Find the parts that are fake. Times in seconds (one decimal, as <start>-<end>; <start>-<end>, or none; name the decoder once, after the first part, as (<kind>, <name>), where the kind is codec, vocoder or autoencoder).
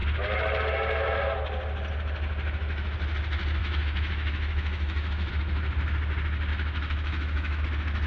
3.6-5.3 (autoencoder, DAC-VAE); 6.5-7.6